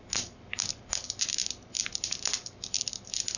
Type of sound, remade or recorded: remade